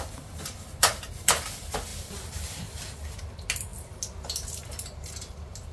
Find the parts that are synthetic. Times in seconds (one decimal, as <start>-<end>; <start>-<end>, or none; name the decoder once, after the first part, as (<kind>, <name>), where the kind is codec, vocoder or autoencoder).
none